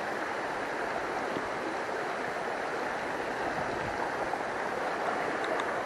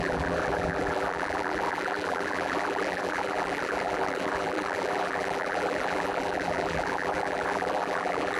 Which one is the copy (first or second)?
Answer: second